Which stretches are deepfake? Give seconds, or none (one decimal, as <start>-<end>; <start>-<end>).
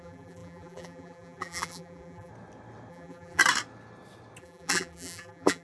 0.0-2.3; 2.9-3.4; 4.4-5.6